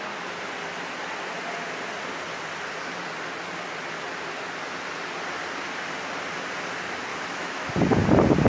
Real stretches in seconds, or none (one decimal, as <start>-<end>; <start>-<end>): 0.0-7.1; 7.7-8.5